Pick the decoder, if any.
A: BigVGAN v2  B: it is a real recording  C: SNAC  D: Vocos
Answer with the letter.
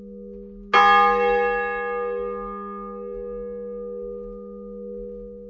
B